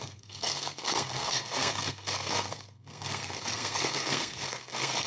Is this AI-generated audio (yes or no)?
yes